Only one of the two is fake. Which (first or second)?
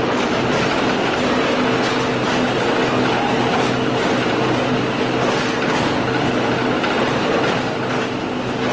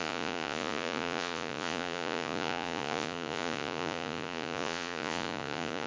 second